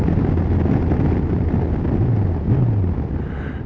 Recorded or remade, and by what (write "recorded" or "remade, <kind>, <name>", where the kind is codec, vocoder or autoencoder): recorded